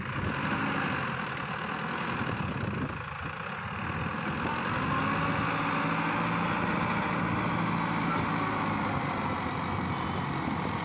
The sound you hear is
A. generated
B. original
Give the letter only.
B